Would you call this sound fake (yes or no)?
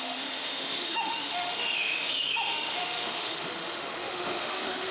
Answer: yes